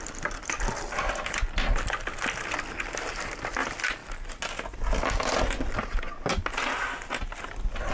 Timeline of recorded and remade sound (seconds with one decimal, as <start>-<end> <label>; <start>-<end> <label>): 0.0-7.9 recorded